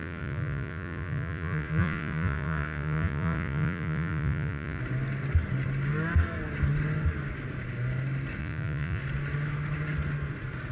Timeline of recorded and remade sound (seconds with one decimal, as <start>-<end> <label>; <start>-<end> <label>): 0.0-4.8 remade; 4.8-8.4 recorded; 8.4-9.0 remade; 9.0-10.7 recorded